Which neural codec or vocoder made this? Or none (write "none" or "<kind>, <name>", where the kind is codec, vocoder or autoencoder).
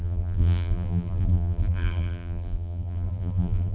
vocoder, BigVGAN v2